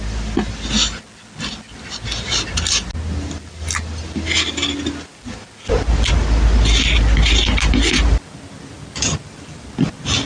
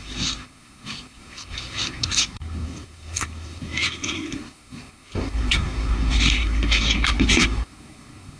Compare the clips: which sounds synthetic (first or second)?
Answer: second